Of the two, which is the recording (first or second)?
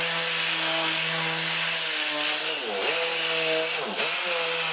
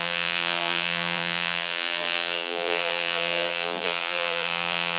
first